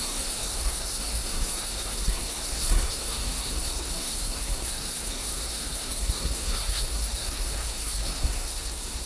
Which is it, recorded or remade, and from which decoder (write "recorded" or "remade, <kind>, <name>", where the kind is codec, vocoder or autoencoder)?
remade, codec, SNAC